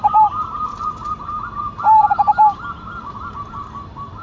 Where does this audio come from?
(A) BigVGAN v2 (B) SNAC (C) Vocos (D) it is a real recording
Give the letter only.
D